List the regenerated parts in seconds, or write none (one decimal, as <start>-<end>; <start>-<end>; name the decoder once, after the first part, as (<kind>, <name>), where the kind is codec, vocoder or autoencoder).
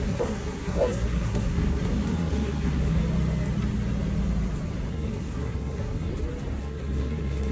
0.0-3.0 (codec, SNAC); 4.9-6.1; 6.6-7.5